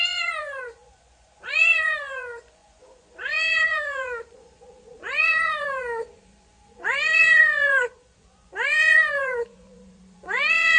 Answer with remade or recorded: remade